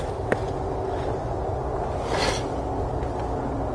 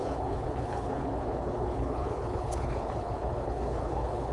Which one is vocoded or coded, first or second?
second